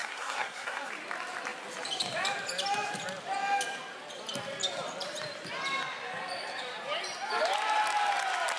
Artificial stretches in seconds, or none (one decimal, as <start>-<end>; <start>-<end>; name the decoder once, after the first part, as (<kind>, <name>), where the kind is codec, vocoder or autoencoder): 0.0-0.9 (codec, SNAC)